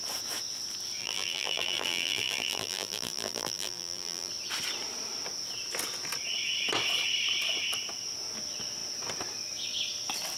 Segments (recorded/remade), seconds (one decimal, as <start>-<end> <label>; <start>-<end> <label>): 0.0-1.0 recorded; 1.0-4.3 remade; 4.3-10.4 recorded